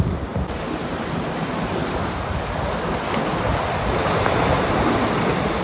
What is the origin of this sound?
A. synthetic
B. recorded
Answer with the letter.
B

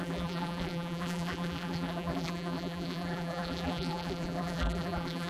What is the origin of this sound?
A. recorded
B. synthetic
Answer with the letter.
B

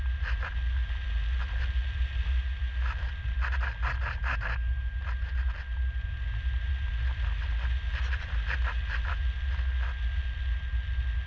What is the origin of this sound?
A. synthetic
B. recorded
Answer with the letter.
B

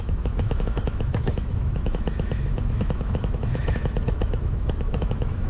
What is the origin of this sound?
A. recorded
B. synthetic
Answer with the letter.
B